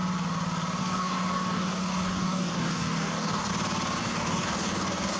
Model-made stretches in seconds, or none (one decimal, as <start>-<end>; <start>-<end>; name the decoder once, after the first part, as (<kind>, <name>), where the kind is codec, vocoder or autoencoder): 0.8-3.5 (codec, DAC); 4.0-5.2